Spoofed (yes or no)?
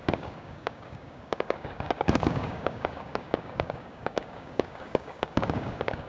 yes